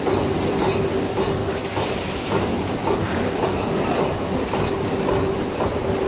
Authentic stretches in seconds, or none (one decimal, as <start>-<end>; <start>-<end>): 0.0-6.1

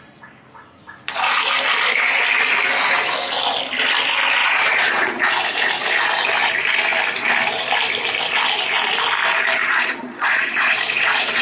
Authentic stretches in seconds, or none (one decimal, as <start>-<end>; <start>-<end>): 0.0-4.4; 5.3-9.6

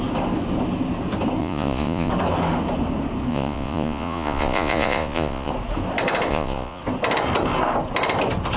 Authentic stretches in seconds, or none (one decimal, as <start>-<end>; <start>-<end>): 0.0-1.4; 2.1-3.3; 5.5-6.3; 6.8-8.6

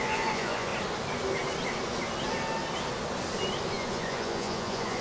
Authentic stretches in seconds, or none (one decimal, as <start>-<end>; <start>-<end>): 0.7-3.7

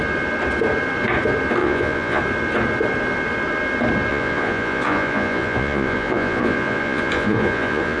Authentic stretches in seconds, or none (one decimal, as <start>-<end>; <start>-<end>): 0.0-1.6; 2.2-4.1